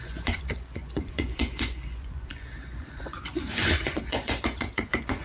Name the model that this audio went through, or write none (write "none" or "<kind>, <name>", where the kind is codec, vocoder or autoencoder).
vocoder, Vocos